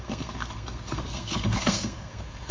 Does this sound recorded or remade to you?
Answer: remade